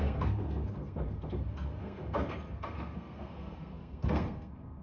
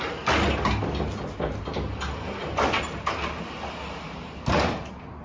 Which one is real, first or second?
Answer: second